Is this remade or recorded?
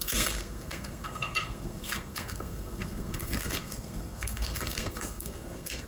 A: remade